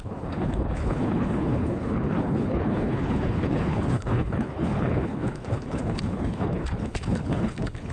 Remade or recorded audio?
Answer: remade